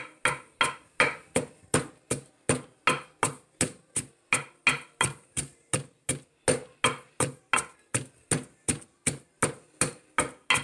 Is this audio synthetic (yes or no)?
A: no